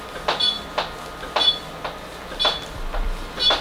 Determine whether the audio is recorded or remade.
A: recorded